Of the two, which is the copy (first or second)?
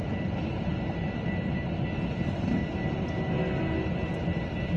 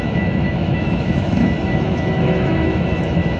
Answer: second